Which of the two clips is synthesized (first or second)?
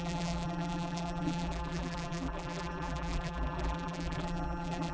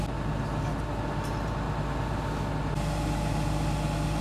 first